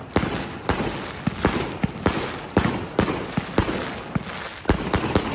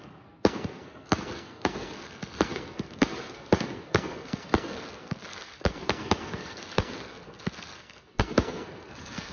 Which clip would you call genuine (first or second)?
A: first